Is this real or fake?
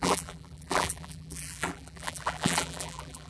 fake